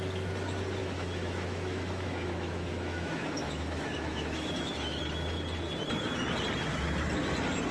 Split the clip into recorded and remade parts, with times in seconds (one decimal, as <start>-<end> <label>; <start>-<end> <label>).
0.0-0.8 recorded; 0.8-5.0 remade; 5.0-7.7 recorded